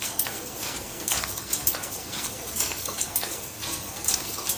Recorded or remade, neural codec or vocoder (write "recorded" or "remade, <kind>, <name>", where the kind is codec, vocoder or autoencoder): remade, codec, SNAC